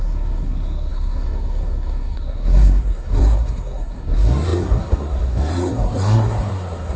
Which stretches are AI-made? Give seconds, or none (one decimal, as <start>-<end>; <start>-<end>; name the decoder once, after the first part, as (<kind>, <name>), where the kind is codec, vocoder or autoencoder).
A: 0.0-7.0 (codec, SNAC)